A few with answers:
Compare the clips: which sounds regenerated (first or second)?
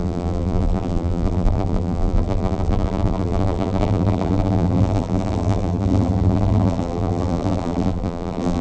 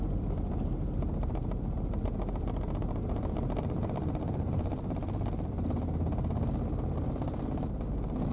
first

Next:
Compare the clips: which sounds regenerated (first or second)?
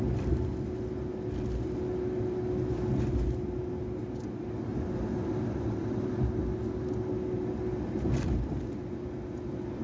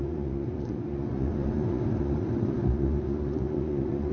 second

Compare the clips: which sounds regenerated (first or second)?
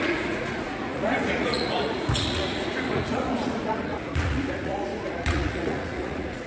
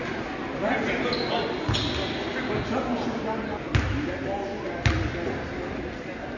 first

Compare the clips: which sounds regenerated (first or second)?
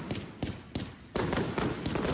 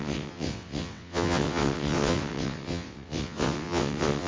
second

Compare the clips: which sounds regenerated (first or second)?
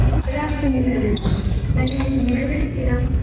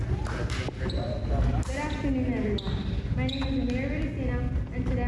first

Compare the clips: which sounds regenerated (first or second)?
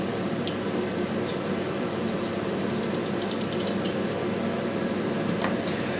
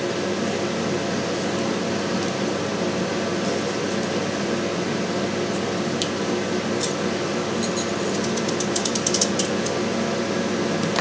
first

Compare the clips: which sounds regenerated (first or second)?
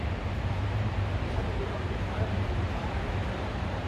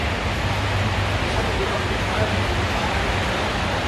first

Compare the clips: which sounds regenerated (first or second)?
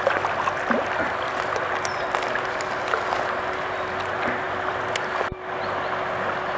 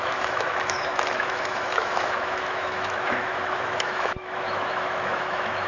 second